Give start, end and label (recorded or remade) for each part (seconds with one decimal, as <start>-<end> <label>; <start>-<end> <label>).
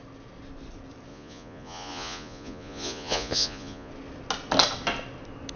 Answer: 0.0-1.1 recorded; 1.1-3.9 remade; 3.9-5.6 recorded